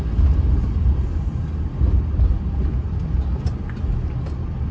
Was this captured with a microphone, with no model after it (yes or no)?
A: yes